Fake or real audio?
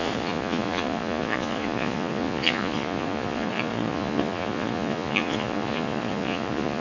fake